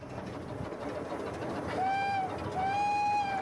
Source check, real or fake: real